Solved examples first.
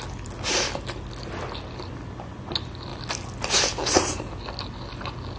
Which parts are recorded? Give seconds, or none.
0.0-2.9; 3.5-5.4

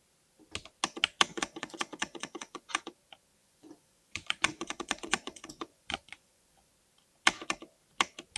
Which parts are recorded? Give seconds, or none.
0.0-1.3; 2.8-3.4; 6.7-8.4

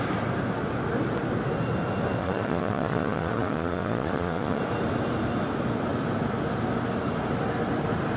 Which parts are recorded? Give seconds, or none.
0.0-2.2; 4.6-8.2

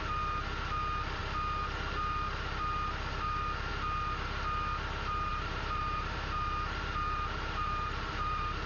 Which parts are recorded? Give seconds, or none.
0.0-5.3

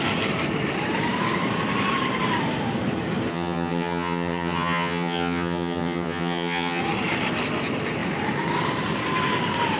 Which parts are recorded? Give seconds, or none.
0.0-3.3; 6.8-9.8

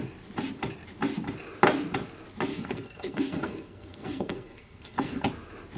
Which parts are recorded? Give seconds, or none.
0.0-2.5; 5.3-5.8

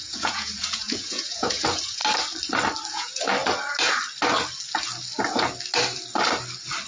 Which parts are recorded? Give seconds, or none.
2.0-2.9; 3.3-6.9

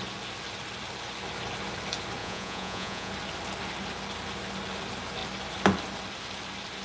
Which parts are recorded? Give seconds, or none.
0.0-2.2; 3.1-6.8